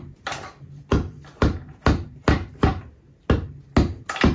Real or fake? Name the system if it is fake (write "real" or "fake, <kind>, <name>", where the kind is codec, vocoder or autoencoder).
real